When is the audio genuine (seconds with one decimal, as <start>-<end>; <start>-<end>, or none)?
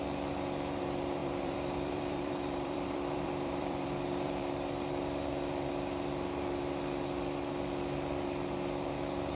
0.0-1.2; 4.4-9.3